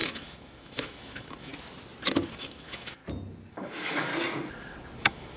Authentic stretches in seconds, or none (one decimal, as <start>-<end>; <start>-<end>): 1.5-2.3; 3.0-3.5; 4.1-5.0